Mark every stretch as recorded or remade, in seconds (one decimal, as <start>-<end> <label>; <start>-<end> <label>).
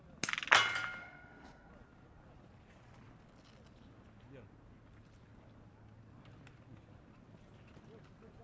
0.0-1.0 recorded; 1.0-1.7 remade; 1.7-8.4 recorded